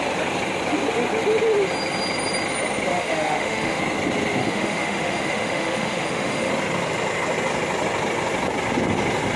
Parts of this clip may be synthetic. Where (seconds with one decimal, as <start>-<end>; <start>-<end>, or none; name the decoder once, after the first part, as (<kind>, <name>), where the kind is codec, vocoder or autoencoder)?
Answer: 2.9-3.8 (autoencoder, DAC-VAE); 4.4-6.5